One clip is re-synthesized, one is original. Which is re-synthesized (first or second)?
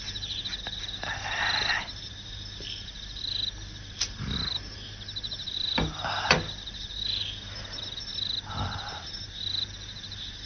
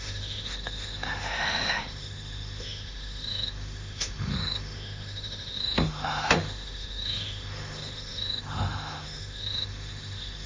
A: second